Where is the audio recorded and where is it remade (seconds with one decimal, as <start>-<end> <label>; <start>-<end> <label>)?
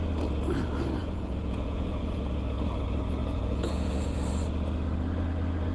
0.0-1.0 recorded; 1.0-2.3 remade; 2.3-3.2 recorded; 3.2-4.2 remade; 4.2-5.7 recorded